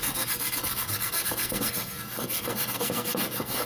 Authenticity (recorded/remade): remade